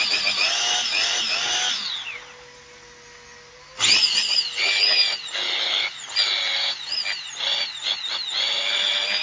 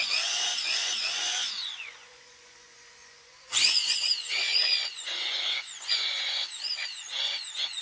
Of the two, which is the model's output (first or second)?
second